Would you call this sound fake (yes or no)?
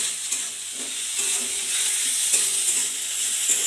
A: yes